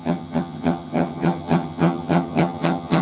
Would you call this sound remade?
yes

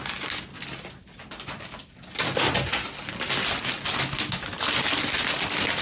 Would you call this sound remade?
no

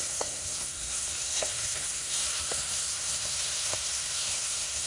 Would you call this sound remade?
yes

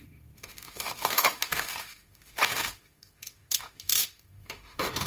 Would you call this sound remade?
yes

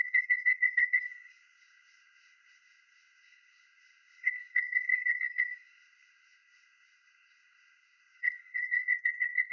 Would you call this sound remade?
yes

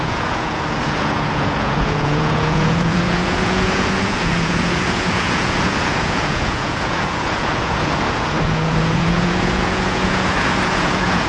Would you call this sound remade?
yes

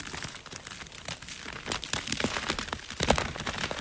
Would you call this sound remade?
no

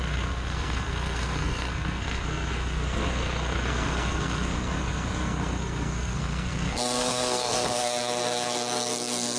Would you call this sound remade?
yes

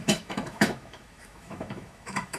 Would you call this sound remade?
yes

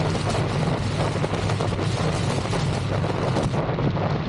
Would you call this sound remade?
no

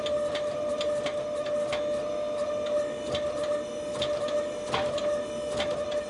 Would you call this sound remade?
no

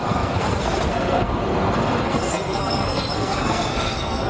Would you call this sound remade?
yes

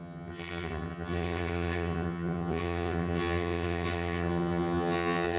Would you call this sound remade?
yes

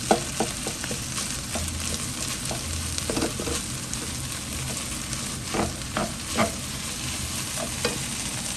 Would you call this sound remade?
no